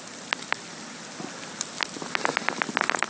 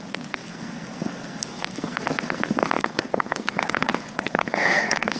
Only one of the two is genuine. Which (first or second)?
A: first